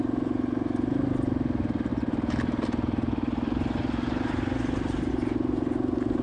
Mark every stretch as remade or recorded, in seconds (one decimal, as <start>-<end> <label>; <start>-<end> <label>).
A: 0.0-6.2 recorded